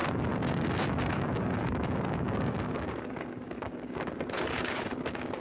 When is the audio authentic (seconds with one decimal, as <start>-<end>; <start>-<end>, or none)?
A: none